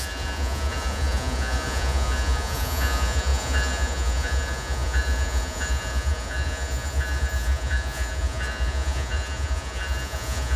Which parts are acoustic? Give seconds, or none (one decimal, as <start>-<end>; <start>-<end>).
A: none